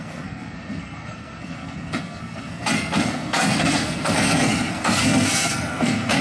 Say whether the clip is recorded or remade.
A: remade